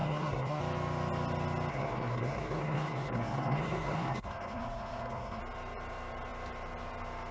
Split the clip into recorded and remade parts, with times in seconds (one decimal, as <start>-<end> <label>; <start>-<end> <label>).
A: 0.0-0.6 remade; 0.6-1.7 recorded; 1.7-5.4 remade; 5.4-7.3 recorded